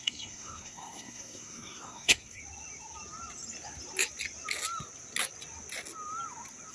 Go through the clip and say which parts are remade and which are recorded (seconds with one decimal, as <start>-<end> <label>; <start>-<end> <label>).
0.0-2.4 remade; 2.4-6.7 recorded